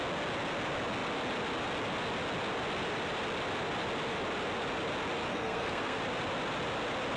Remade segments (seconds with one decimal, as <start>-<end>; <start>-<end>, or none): 5.3-6.0